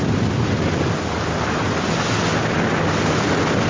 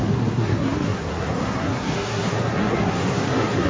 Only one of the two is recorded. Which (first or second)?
first